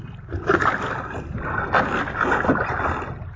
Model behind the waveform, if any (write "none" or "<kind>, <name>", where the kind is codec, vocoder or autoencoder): none